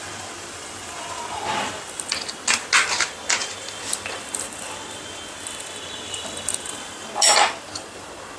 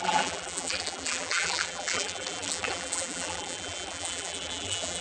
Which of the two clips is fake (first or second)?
second